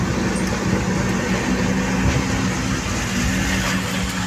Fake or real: real